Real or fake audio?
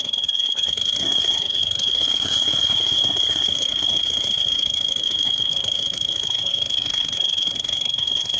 fake